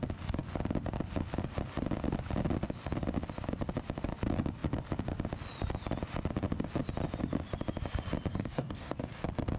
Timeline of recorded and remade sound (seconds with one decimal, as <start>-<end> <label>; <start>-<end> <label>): 0.0-8.3 recorded; 8.3-9.0 remade; 9.0-9.6 recorded